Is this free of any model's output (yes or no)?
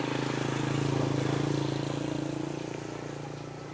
yes